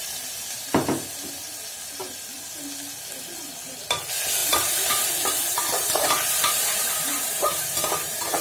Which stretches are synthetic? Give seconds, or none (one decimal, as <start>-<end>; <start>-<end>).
4.4-8.4